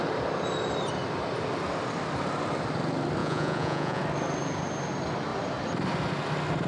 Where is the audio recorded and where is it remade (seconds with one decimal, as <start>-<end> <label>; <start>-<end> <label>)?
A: 0.0-3.2 recorded; 3.2-4.0 remade; 4.0-6.7 recorded